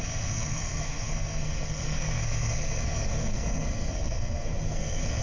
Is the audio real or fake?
fake